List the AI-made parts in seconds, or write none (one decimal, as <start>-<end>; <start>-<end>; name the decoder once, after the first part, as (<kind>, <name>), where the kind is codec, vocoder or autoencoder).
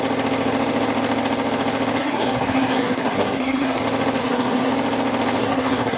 2.0-3.8 (codec, SNAC); 4.2-4.7; 5.4-6.0